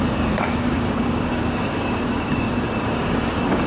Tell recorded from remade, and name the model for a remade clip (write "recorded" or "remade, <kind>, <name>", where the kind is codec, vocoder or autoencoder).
remade, codec, DAC